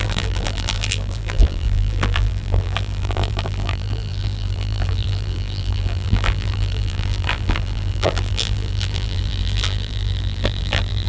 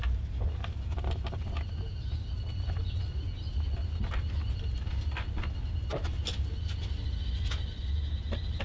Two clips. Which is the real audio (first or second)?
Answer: second